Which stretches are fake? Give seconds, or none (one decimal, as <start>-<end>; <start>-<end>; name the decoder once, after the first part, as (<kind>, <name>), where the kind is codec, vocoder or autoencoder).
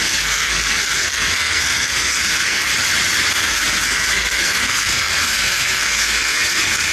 0.0-2.7 (codec, SNAC); 3.3-6.9